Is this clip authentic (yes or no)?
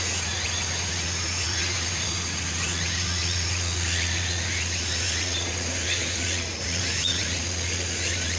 no